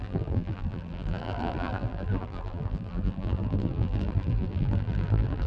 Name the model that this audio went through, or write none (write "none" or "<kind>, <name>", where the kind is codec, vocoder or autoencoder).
vocoder, BigVGAN v2